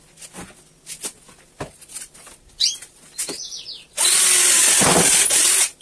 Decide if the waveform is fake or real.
real